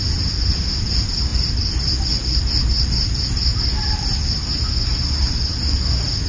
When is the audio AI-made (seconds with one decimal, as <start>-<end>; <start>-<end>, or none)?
none